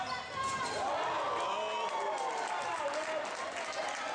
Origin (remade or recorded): recorded